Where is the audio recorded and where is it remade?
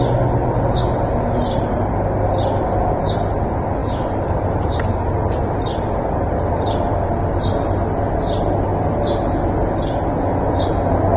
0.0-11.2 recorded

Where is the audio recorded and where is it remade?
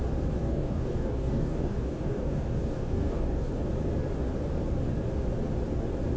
0.0-0.4 recorded; 0.4-3.5 remade; 3.5-6.2 recorded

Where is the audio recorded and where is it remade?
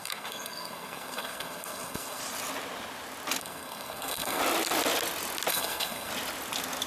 0.0-2.2 remade; 2.2-3.4 recorded; 3.4-4.4 remade; 4.4-5.5 recorded; 5.5-6.1 remade; 6.1-6.9 recorded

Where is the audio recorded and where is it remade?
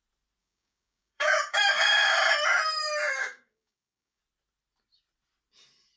0.0-0.4 recorded; 0.4-1.6 remade; 1.6-3.2 recorded; 3.2-4.2 remade; 4.2-6.0 recorded